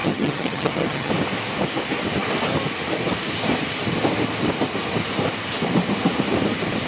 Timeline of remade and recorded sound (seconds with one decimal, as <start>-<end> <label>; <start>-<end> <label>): 0.0-1.1 remade; 1.1-6.9 recorded

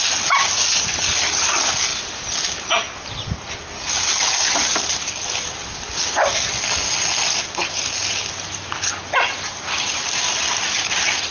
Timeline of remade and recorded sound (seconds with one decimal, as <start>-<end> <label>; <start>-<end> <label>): 0.0-11.3 recorded

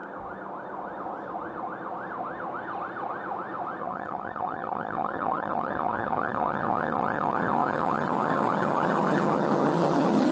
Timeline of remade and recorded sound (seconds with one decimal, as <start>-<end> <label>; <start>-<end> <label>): 0.0-3.8 recorded; 3.8-10.3 remade